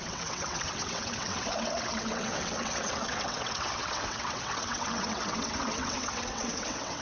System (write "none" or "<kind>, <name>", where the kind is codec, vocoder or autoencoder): vocoder, WaveNeXt